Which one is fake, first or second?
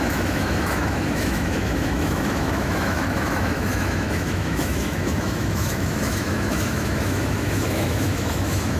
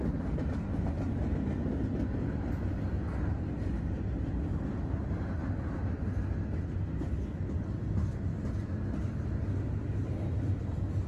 first